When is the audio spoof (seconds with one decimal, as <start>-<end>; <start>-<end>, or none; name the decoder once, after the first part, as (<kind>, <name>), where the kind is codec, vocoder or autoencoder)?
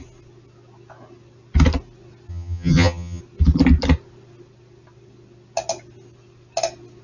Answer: 2.3-3.2 (vocoder, HiFi-GAN)